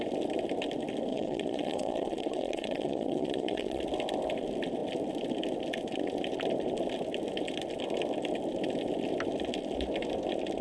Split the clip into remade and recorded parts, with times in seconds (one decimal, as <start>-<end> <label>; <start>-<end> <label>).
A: 0.0-1.1 recorded; 1.1-3.8 remade; 3.8-10.6 recorded